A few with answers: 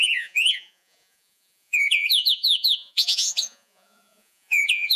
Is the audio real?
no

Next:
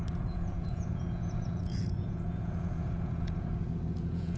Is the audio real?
no